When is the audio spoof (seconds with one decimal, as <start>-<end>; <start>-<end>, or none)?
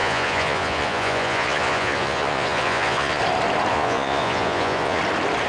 0.0-3.2; 3.7-5.0